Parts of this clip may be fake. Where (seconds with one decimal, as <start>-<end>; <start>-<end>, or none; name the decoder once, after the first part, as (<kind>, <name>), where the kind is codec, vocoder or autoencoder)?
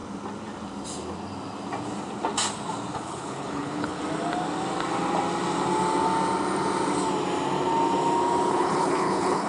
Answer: 2.9-4.0 (codec, HILCodec); 8.5-9.5